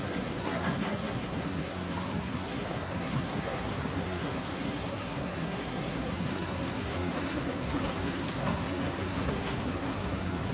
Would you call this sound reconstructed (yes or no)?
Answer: yes